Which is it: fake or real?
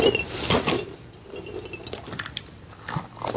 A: real